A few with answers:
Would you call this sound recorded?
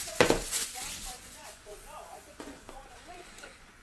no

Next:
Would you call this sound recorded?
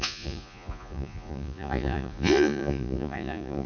no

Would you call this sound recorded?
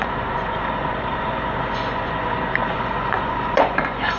no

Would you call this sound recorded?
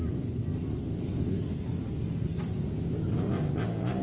yes